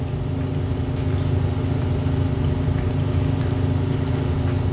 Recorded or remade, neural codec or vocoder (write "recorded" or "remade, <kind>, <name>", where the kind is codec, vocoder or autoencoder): recorded